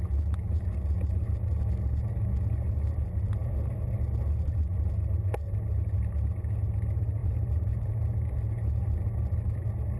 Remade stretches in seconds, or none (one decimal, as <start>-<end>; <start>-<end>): 7.2-7.7